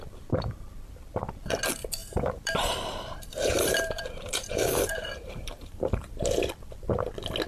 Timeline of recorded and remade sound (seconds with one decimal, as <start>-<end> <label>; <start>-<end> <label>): 0.0-2.0 recorded; 2.0-6.5 remade; 6.5-7.5 recorded